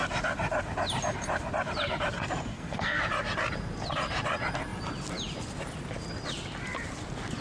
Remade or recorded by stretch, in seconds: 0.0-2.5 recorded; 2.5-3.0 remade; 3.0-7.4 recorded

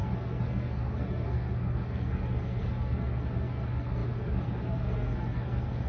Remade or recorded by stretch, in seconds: 0.0-5.9 remade